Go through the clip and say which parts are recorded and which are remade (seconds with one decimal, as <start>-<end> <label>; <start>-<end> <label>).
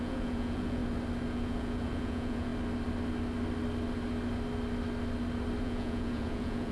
0.0-0.8 remade; 0.8-1.3 recorded; 1.3-2.5 remade; 2.5-5.6 recorded; 5.6-6.7 remade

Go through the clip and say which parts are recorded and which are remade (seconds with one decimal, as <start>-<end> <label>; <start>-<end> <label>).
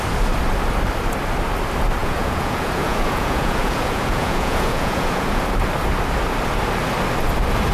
0.0-2.0 recorded; 2.0-5.4 remade; 5.4-7.7 recorded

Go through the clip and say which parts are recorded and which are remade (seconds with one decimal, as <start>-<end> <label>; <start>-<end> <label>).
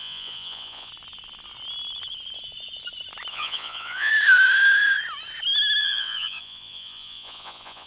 0.0-0.9 remade; 0.9-3.3 recorded; 3.3-4.1 remade; 4.1-5.8 recorded; 5.8-7.9 remade